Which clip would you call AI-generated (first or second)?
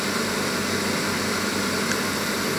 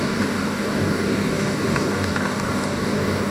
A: second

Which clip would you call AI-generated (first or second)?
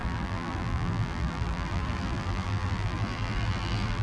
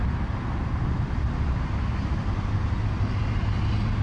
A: first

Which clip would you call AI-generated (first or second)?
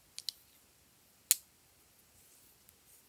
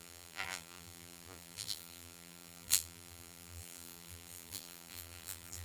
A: second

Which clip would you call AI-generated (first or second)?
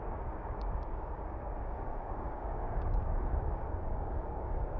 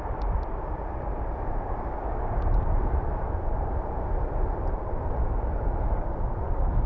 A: first